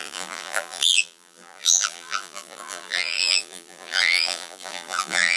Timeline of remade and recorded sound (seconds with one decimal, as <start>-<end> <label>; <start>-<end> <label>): 0.0-5.4 remade